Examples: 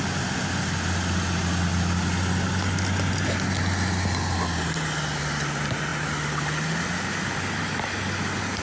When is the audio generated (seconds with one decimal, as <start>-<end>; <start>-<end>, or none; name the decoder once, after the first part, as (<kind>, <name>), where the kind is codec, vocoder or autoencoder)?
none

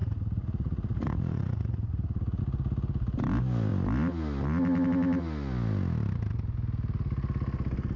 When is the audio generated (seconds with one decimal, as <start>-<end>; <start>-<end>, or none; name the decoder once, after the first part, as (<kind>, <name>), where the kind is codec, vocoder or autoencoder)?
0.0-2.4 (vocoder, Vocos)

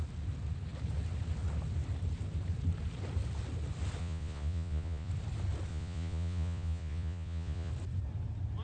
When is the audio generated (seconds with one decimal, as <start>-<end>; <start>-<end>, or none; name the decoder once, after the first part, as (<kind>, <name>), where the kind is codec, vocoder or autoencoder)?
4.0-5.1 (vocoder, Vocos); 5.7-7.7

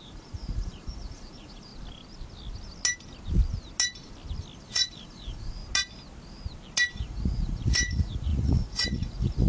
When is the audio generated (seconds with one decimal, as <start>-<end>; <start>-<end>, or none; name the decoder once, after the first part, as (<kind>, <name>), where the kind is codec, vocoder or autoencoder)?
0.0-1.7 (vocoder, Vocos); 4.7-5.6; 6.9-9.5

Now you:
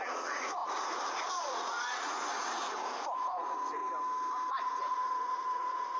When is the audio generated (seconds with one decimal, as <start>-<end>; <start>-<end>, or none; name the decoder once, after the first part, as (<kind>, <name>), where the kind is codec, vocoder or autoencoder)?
0.0-3.8 (vocoder, Vocos); 4.5-6.0

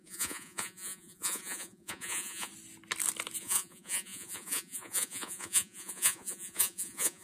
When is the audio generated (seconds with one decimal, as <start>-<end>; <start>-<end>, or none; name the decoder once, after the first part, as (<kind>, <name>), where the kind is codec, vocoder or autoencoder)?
0.0-2.5 (vocoder, Vocos); 3.4-7.2

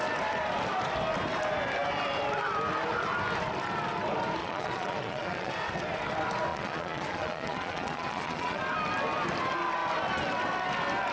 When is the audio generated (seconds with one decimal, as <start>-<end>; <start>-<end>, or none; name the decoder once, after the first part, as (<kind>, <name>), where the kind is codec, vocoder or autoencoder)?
4.4-5.5 (vocoder, Vocos); 6.5-8.6